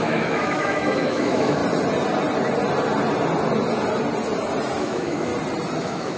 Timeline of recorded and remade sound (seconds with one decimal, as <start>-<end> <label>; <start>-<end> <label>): 0.0-1.6 remade; 1.6-4.8 recorded; 4.8-5.3 remade; 5.3-5.8 recorded; 5.8-6.2 remade